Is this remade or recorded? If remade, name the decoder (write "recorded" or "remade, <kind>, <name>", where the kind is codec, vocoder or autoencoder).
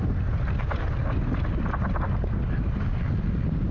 recorded